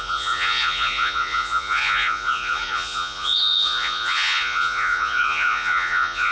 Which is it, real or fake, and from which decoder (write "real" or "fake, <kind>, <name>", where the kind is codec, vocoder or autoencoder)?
fake, vocoder, Vocos